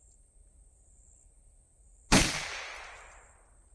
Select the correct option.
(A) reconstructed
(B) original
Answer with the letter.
B